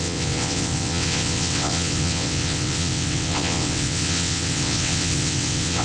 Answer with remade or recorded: remade